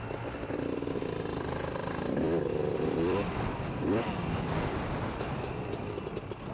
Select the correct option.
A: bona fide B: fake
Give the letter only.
B